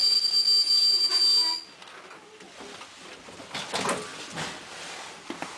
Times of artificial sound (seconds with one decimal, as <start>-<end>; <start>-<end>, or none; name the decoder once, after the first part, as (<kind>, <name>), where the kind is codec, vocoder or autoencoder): none